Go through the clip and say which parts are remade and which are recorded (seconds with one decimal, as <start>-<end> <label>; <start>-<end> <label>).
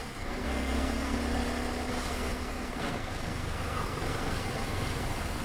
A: 0.0-1.2 remade; 1.2-1.9 recorded; 1.9-5.4 remade